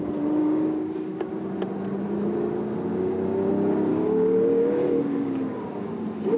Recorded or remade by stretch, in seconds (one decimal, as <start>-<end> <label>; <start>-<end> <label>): 0.0-0.4 recorded; 0.4-1.3 remade; 1.3-2.9 recorded; 2.9-3.5 remade; 3.5-3.9 recorded; 3.9-5.9 remade; 5.9-6.4 recorded